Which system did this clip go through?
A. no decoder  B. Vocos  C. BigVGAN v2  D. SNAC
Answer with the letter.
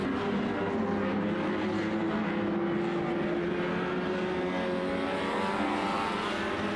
A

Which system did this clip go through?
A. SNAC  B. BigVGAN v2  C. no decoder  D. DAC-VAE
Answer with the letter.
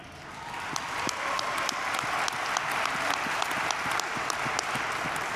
C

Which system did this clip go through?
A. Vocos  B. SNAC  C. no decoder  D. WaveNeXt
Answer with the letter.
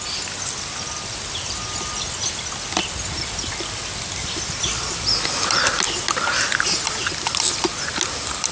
C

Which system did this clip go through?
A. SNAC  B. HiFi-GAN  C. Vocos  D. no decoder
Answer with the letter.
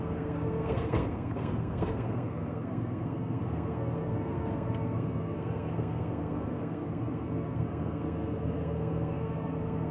A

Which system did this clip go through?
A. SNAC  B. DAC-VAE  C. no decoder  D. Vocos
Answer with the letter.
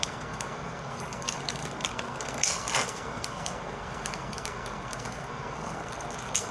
A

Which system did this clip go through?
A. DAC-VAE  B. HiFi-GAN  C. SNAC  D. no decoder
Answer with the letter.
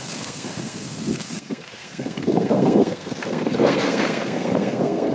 C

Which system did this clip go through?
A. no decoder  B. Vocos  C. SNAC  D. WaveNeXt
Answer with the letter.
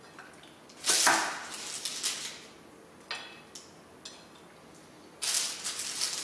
A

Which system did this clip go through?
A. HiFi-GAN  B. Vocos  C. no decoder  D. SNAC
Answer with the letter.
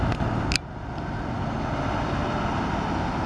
C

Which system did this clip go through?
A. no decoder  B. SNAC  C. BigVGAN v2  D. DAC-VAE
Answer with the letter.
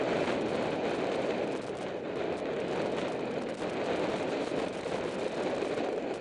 A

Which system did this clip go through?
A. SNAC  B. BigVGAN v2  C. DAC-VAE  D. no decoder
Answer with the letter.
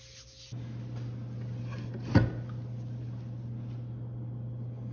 D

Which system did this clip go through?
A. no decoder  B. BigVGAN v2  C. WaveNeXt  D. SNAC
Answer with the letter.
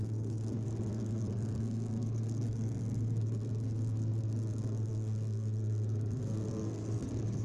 D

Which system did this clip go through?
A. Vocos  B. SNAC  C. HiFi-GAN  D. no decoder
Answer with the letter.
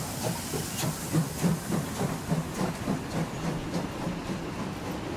D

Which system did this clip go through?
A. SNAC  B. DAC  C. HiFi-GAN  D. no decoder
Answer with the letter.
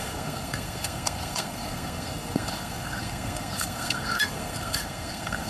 A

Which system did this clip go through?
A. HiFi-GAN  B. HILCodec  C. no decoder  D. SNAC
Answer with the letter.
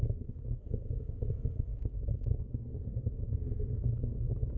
D